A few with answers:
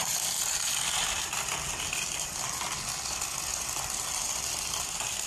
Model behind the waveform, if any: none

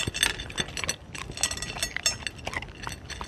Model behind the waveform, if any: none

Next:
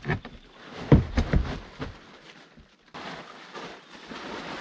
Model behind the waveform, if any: none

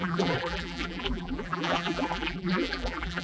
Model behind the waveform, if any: vocoder, BigVGAN v2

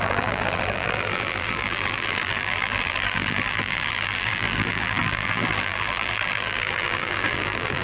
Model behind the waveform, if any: vocoder, BigVGAN v2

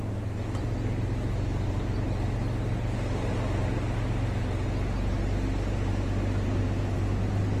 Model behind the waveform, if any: none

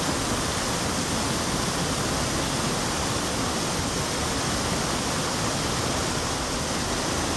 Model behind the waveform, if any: none